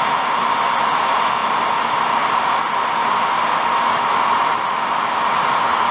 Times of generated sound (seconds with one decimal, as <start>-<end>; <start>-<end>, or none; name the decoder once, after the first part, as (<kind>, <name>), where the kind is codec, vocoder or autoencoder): none